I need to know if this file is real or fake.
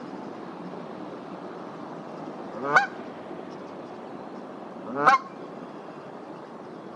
real